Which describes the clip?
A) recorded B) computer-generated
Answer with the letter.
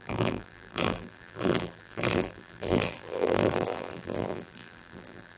B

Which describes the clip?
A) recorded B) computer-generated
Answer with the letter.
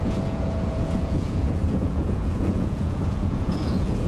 B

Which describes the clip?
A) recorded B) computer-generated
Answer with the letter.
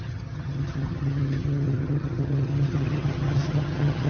B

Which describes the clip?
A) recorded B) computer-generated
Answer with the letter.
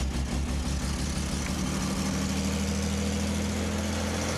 A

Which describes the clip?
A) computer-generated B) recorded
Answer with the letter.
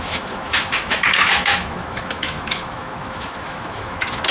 A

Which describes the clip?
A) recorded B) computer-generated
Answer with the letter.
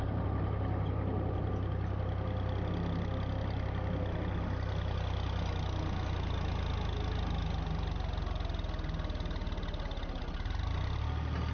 A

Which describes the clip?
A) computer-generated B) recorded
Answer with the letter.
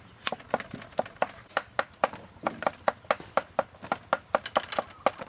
B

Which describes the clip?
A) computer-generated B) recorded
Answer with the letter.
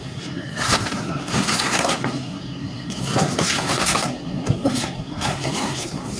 A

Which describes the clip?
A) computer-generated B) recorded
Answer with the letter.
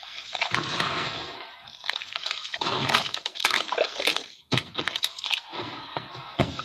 A